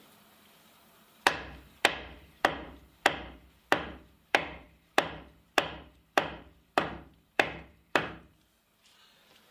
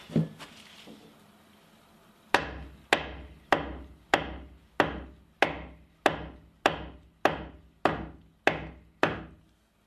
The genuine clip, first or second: second